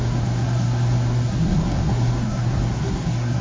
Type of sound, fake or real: fake